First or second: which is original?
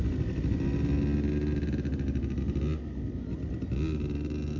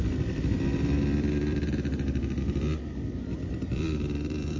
first